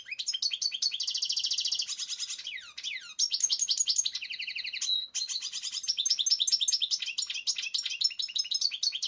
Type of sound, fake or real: real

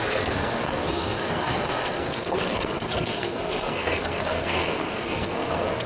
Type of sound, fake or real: fake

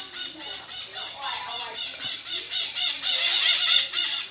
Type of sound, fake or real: real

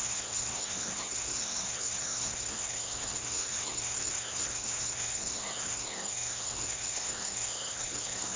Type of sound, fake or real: fake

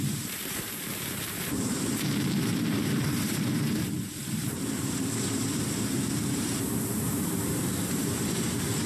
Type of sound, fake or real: fake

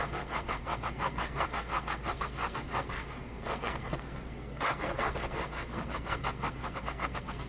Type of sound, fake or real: fake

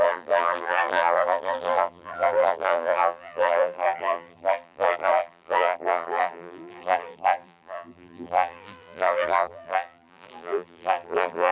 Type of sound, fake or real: fake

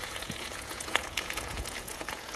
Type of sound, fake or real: fake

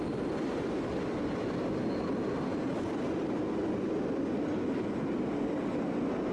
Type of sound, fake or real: fake